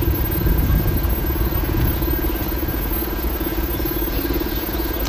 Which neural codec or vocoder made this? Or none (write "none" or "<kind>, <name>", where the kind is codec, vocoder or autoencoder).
vocoder, Vocos